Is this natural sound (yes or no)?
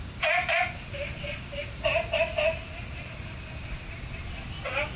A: yes